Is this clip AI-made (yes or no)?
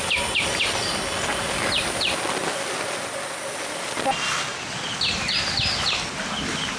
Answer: no